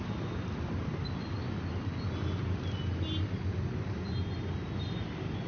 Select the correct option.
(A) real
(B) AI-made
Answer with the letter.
A